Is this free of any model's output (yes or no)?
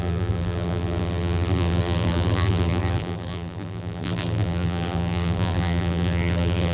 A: no